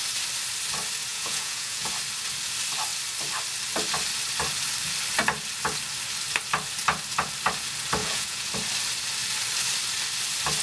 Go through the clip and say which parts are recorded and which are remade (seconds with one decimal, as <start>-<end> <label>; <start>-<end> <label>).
0.0-1.1 recorded; 1.1-1.9 remade; 1.9-8.0 recorded; 8.0-8.5 remade; 8.5-10.6 recorded